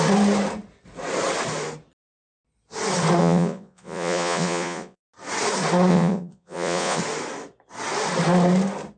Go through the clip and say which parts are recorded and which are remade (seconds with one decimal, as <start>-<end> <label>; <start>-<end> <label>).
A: 0.0-3.2 recorded; 3.2-5.0 remade; 5.0-5.9 recorded; 5.9-7.0 remade; 7.0-9.0 recorded